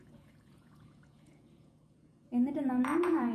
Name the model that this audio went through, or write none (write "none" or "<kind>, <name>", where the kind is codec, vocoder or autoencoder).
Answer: vocoder, Vocos